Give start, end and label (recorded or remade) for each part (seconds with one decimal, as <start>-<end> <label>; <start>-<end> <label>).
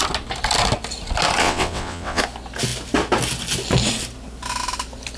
0.0-1.4 recorded; 1.4-2.2 remade; 2.2-5.2 recorded